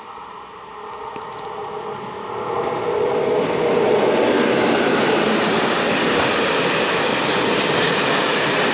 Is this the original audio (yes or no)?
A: yes